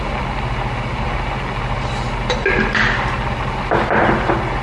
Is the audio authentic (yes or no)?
yes